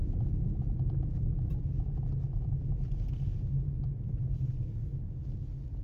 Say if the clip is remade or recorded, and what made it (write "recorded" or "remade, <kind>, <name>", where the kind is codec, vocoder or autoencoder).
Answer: recorded